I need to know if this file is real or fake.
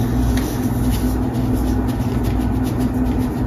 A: real